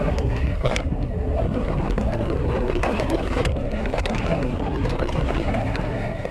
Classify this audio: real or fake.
fake